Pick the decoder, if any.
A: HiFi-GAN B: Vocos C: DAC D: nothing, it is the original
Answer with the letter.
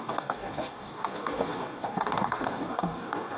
C